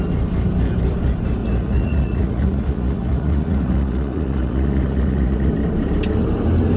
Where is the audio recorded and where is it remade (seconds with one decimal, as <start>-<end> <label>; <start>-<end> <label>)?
0.0-1.4 recorded; 1.4-5.5 remade; 5.5-6.8 recorded